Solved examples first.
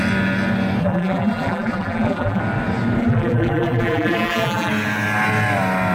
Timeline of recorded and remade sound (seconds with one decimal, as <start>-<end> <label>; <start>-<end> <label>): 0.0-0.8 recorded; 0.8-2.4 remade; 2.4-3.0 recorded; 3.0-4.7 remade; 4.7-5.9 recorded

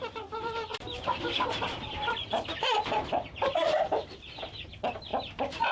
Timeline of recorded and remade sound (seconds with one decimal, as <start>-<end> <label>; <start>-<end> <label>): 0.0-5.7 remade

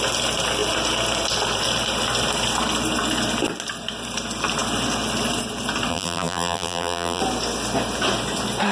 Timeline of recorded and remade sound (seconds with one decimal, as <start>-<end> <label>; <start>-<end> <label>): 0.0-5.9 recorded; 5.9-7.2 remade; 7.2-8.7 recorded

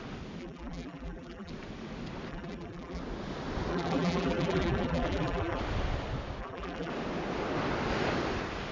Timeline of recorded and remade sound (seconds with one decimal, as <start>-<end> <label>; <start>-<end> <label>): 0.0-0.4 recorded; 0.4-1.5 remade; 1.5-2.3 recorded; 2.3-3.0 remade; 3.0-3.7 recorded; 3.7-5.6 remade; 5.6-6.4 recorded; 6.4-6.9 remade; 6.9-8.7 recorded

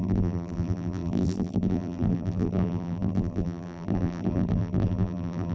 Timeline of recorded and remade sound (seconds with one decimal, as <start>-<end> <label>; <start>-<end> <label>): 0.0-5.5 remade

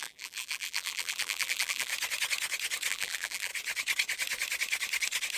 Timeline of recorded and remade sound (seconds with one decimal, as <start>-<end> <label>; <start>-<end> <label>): 0.0-1.9 remade; 1.9-2.9 recorded; 2.9-3.5 remade; 3.5-5.4 recorded